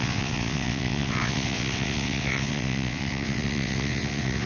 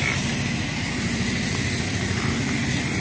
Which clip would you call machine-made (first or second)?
first